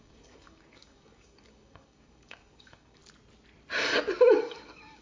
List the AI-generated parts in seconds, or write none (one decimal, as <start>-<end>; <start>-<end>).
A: 0.0-3.0; 4.3-5.0